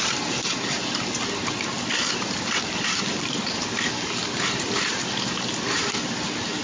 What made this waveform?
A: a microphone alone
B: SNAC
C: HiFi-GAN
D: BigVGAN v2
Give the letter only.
A